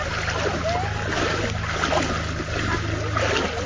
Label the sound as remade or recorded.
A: recorded